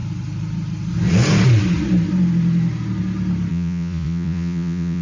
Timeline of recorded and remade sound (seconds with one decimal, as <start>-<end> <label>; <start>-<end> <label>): 0.0-3.5 recorded; 3.5-5.0 remade